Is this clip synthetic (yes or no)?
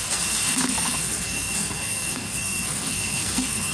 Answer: yes